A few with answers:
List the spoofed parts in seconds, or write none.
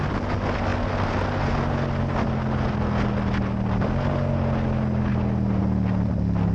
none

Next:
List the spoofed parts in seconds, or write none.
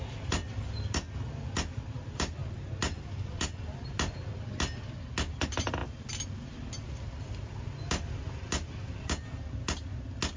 none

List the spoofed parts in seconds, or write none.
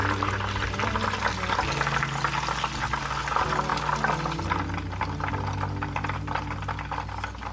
none